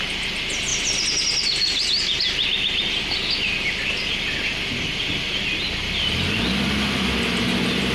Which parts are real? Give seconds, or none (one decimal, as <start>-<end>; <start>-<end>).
0.0-0.7; 1.8-7.9